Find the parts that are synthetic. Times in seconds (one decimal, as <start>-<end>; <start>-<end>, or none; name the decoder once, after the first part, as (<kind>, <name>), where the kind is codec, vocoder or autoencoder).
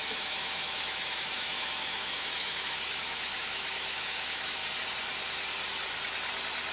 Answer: 0.0-4.6 (autoencoder, DAC-VAE)